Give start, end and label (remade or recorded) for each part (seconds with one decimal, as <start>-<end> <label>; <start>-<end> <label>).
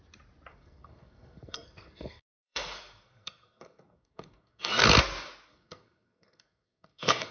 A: 0.0-0.5 recorded; 0.5-4.9 remade; 4.9-5.5 recorded; 5.5-7.3 remade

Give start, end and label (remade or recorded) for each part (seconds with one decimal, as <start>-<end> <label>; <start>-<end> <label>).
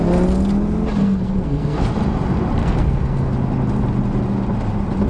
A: 0.0-1.0 recorded; 1.0-1.9 remade; 1.9-2.6 recorded; 2.6-3.3 remade; 3.3-5.1 recorded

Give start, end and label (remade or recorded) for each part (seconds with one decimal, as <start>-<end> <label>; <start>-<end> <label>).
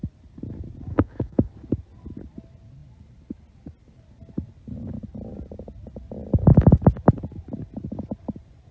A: 0.0-0.9 recorded; 0.9-1.5 remade; 1.5-8.7 recorded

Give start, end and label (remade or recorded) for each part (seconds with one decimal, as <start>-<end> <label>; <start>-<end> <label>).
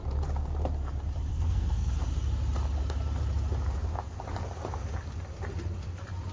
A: 0.0-1.3 recorded; 1.3-1.9 remade; 1.9-6.3 recorded